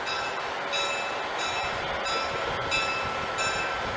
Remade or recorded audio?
recorded